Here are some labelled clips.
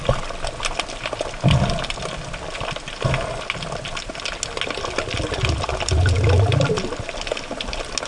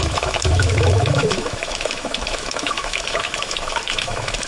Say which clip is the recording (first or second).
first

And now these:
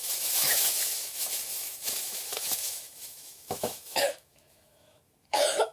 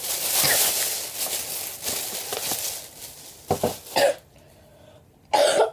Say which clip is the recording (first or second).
second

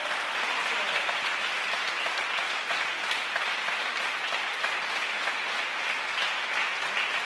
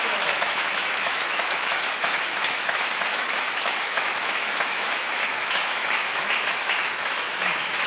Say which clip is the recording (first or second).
first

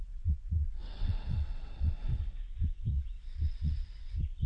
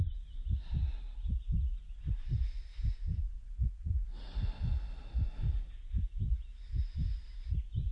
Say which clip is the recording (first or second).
second